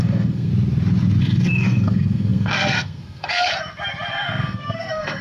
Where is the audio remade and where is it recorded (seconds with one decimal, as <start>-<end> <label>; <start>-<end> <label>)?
0.0-0.5 remade; 0.5-1.2 recorded; 1.2-3.5 remade; 3.5-4.1 recorded; 4.1-5.2 remade